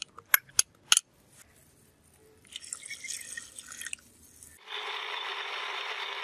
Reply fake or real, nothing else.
real